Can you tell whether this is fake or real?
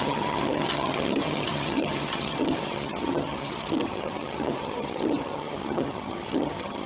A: fake